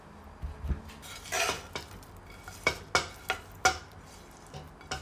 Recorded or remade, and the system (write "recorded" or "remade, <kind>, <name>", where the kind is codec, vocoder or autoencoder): recorded